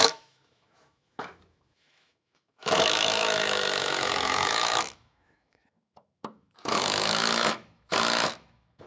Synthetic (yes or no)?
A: yes